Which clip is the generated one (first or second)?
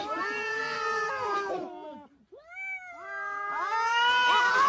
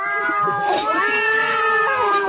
second